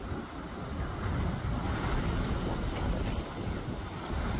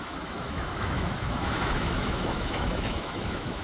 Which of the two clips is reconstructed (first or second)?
second